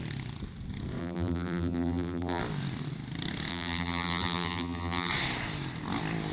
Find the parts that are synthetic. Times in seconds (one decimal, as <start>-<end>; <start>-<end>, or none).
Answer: 1.0-2.4; 3.5-5.1